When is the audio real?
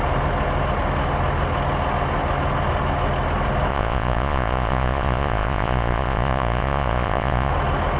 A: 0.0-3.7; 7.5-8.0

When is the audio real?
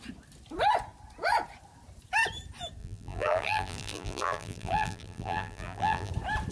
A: 0.0-2.8; 6.1-6.5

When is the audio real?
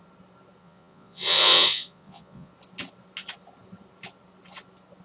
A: 0.0-0.6; 2.5-5.0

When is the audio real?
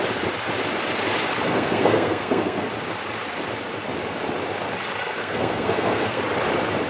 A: 0.0-1.5; 2.7-5.2; 6.2-6.9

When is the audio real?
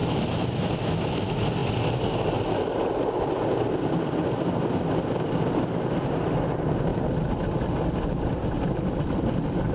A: 1.1-9.7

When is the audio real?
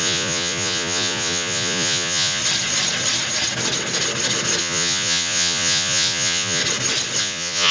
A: 2.4-4.6; 6.6-7.2